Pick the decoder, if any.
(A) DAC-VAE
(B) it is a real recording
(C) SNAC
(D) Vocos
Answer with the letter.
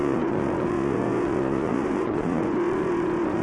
D